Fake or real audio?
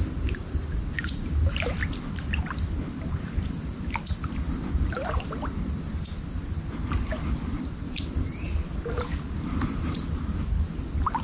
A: real